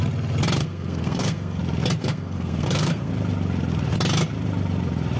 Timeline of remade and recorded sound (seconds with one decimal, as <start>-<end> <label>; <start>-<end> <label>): 0.0-0.6 recorded; 0.6-1.6 remade; 1.6-2.0 recorded; 2.0-3.1 remade; 3.1-5.2 recorded